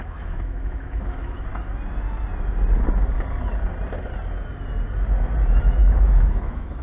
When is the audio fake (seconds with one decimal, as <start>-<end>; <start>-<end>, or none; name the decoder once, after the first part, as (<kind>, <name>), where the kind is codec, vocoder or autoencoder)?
0.0-1.5 (autoencoder, DAC-VAE); 5.6-6.8